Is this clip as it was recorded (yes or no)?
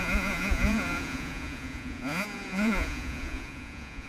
no